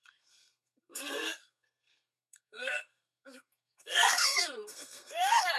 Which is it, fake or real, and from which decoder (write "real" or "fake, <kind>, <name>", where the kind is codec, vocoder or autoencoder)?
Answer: fake, codec, SNAC